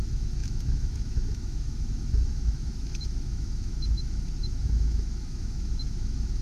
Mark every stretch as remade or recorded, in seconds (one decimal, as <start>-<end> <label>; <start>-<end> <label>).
0.0-6.4 remade